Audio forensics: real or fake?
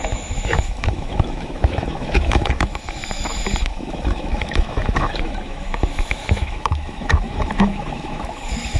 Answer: fake